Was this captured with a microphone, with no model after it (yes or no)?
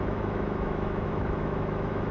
no